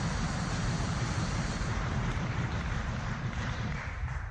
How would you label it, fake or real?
fake